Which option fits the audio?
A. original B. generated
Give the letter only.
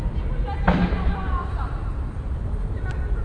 A